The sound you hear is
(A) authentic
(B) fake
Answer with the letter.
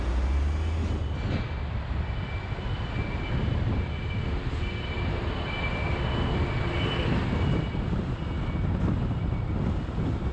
A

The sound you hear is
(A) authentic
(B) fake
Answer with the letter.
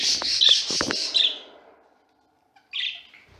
A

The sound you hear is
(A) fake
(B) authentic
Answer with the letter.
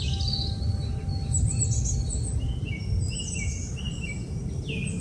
B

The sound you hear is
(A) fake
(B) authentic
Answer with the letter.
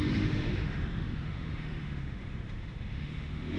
A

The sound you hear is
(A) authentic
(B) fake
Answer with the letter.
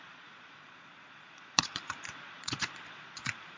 B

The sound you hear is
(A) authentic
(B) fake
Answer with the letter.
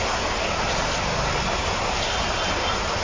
A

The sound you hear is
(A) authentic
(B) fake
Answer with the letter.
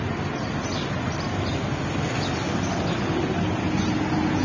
A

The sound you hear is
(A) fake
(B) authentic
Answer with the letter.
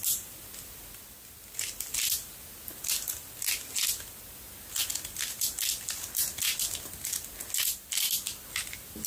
B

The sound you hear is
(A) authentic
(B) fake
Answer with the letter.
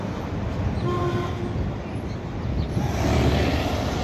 A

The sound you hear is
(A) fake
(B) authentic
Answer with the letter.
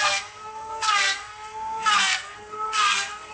A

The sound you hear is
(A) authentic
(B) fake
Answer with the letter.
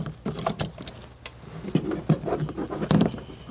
A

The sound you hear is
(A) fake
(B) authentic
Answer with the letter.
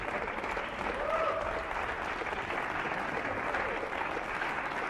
B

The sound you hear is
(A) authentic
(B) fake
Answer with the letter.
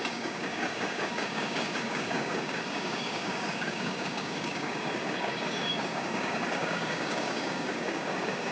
B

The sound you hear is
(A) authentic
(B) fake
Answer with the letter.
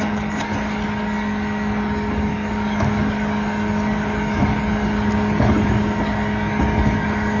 B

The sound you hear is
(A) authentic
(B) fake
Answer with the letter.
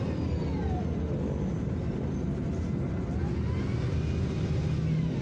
A